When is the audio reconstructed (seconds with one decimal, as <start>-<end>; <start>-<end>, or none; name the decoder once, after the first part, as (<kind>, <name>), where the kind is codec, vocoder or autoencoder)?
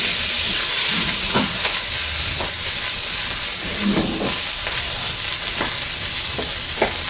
0.5-1.9 (vocoder, Vocos)